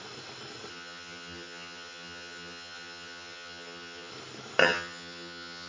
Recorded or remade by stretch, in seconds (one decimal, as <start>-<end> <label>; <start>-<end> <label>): 0.0-0.7 recorded; 0.7-4.1 remade; 4.1-4.6 recorded; 4.6-5.7 remade